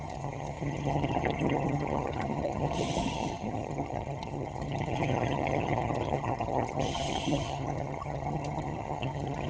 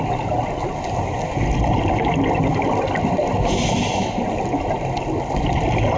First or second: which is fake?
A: first